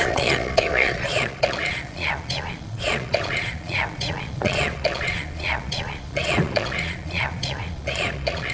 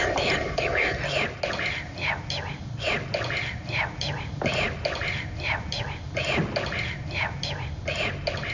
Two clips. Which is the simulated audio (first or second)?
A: first